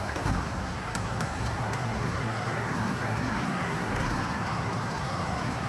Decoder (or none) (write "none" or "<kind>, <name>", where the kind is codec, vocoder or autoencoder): codec, SNAC